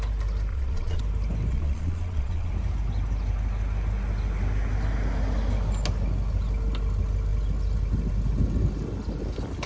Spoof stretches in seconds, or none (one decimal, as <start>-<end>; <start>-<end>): 0.5-1.0; 1.5-2.5